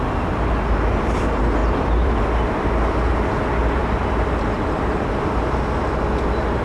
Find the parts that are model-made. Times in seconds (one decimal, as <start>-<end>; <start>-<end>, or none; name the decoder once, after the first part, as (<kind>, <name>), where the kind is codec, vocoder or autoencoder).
1.6-2.2 (vocoder, BigVGAN v2)